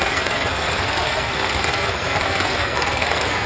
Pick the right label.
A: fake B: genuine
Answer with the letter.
A